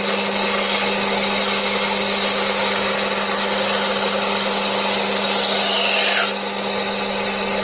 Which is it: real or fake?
real